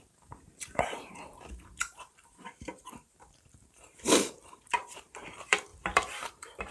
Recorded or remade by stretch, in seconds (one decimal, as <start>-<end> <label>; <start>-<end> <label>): 0.0-6.7 remade